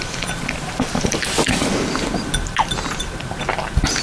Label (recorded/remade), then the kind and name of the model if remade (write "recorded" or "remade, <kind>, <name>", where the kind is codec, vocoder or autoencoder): recorded